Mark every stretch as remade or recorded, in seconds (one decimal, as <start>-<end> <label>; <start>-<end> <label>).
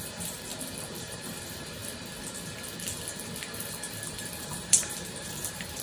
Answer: 0.0-0.5 remade; 0.5-1.0 recorded; 1.0-1.8 remade; 1.8-4.4 recorded; 4.4-5.8 remade